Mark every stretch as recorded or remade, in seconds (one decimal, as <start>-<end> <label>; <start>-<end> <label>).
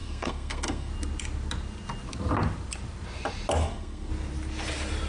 0.0-0.9 remade; 0.9-3.6 recorded; 3.6-4.1 remade; 4.1-5.1 recorded